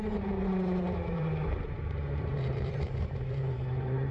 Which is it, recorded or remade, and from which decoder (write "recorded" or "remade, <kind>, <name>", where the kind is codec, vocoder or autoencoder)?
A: remade, vocoder, BigVGAN v2